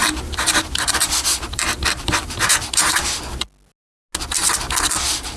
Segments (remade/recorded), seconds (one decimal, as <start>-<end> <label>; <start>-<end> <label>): 0.0-3.2 remade; 3.2-5.4 recorded